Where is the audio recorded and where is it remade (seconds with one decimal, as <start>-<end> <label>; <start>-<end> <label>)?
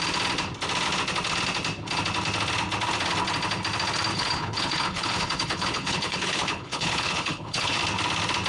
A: 0.0-4.1 recorded; 4.1-7.8 remade; 7.8-8.5 recorded